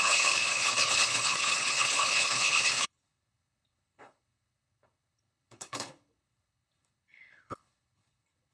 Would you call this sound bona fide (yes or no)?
no